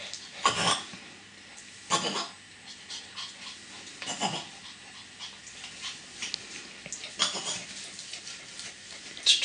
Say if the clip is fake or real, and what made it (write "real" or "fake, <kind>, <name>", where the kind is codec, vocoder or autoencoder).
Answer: real